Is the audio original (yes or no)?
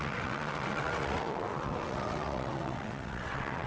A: no